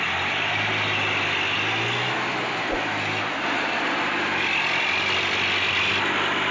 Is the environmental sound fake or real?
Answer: real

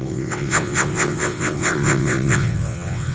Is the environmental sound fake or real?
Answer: fake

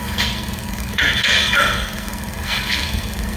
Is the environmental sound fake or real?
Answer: fake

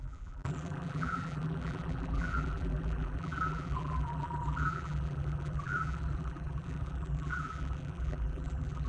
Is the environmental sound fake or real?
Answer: fake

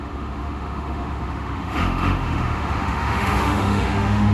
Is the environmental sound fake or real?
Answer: fake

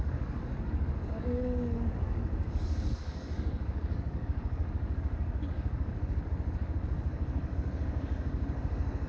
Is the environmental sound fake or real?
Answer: fake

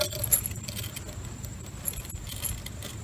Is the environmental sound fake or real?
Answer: real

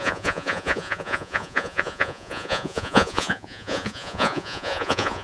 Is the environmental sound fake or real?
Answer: fake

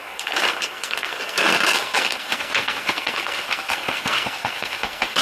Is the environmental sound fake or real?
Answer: fake